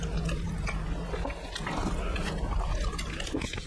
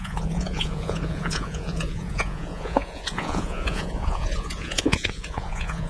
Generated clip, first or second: second